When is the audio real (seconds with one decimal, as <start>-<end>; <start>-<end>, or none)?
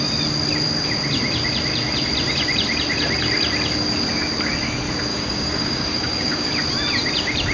0.0-5.1; 6.5-7.5